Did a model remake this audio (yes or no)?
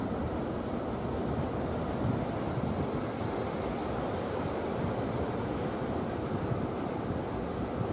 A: no